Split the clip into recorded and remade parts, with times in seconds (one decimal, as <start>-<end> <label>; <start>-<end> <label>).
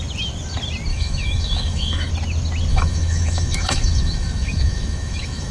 0.0-0.9 recorded; 0.9-2.1 remade; 2.1-2.7 recorded; 2.7-5.5 remade